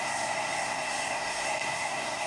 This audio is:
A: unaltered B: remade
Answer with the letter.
B